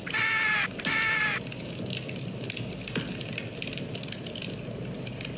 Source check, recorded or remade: recorded